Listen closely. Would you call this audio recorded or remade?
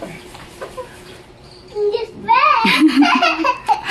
remade